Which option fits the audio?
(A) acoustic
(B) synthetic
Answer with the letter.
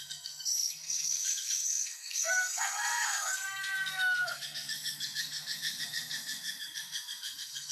B